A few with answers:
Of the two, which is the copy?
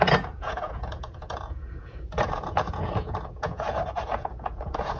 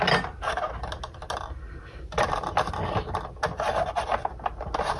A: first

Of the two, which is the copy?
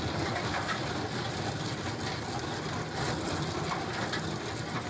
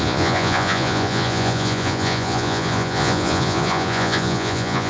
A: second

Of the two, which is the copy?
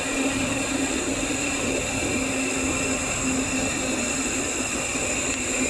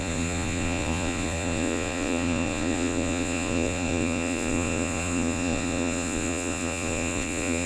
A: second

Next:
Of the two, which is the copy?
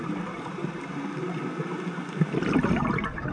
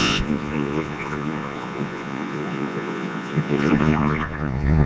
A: second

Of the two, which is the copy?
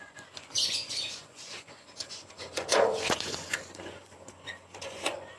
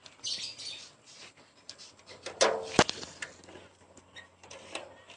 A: first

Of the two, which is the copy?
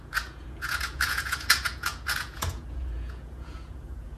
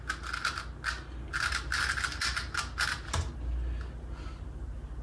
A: first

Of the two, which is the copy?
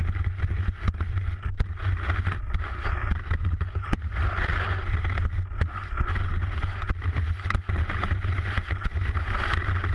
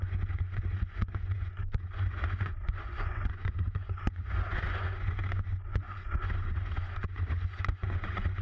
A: second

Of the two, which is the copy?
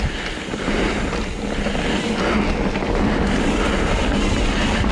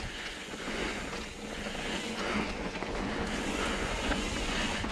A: second